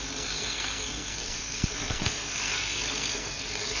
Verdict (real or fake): fake